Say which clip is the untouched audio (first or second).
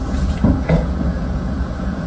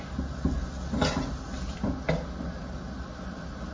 second